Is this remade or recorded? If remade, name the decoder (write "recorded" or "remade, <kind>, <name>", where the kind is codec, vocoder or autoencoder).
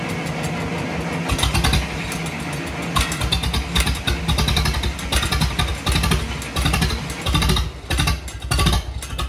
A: recorded